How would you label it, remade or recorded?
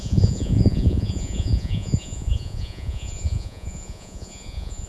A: remade